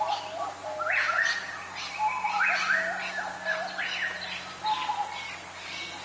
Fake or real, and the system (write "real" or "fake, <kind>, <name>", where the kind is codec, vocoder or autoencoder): real